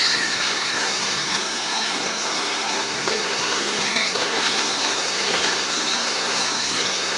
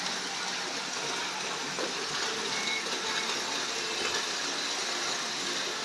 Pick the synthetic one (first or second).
first